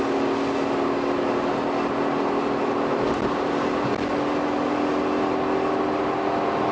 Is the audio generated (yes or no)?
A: no